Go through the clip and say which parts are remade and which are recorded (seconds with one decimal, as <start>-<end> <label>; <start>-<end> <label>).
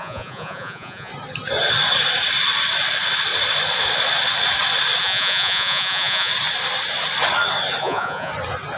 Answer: 0.0-1.1 remade; 1.1-5.0 recorded; 5.0-6.3 remade; 6.3-7.8 recorded; 7.8-8.3 remade; 8.3-8.8 recorded